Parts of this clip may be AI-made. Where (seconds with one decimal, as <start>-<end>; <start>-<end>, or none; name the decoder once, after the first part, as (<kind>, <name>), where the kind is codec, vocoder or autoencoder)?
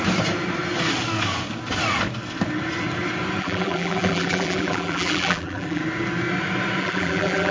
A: 3.4-5.8 (vocoder, BigVGAN v2); 6.8-7.5